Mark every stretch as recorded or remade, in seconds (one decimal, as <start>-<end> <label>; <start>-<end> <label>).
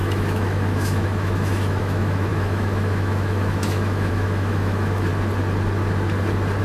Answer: 0.0-5.1 remade; 5.1-6.6 recorded